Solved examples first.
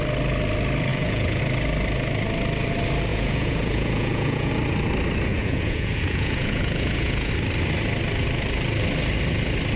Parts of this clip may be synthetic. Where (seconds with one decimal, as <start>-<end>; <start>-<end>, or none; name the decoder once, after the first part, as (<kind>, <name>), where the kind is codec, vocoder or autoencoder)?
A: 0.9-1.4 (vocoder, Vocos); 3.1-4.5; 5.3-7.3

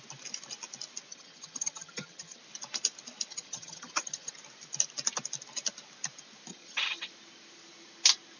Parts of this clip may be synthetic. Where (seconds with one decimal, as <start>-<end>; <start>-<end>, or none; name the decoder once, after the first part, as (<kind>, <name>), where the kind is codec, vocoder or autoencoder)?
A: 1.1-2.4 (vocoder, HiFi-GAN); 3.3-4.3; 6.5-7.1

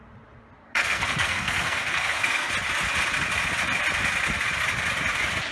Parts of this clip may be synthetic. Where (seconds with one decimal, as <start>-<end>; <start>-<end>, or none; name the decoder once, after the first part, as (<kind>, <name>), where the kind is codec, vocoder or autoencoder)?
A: 0.6-2.5 (codec, SNAC)